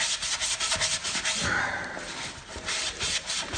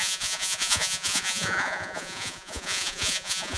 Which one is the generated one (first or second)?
second